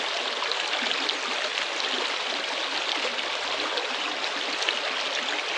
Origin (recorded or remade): recorded